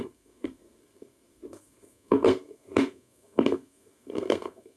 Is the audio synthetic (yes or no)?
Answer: yes